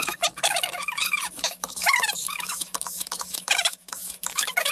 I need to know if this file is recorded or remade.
remade